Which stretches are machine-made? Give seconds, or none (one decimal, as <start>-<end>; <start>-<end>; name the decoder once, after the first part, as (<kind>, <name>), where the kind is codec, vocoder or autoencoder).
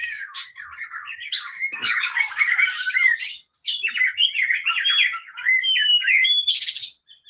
0.0-3.2 (codec, DAC); 5.2-6.3